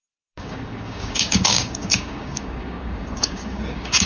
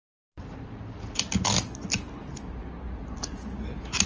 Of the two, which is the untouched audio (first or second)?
second